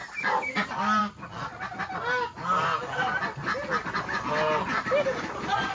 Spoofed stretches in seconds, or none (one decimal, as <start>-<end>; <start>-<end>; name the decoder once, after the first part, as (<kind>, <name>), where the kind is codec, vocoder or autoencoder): none